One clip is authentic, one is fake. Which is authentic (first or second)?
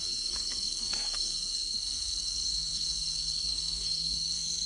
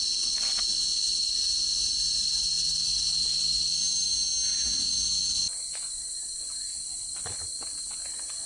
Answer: second